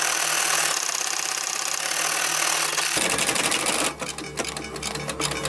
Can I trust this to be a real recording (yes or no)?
yes